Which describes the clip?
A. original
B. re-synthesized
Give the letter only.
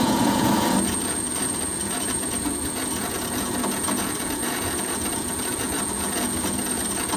B